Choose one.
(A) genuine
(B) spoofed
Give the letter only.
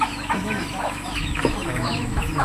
B